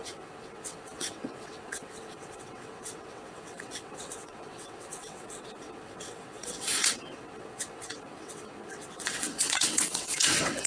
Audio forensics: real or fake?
fake